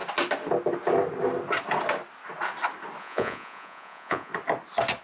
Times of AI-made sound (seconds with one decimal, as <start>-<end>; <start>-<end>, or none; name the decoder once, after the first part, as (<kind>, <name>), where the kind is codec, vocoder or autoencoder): 3.0-4.3 (vocoder, Vocos)